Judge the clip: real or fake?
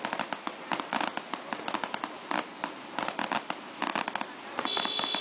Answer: real